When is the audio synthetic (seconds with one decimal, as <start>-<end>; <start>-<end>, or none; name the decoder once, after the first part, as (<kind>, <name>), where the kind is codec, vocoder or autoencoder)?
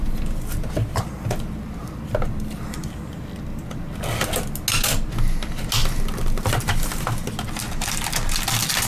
none